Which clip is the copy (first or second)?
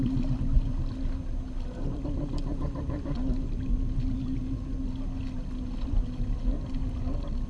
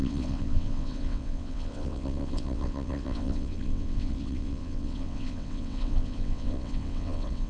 second